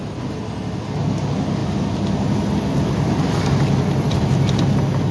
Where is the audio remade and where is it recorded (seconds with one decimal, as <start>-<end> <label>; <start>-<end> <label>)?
0.0-5.1 recorded